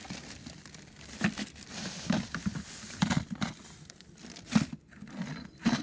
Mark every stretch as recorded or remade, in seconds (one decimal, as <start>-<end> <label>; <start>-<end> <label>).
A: 0.0-1.2 remade; 1.2-5.8 recorded